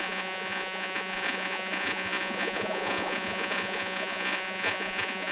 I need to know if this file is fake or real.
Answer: fake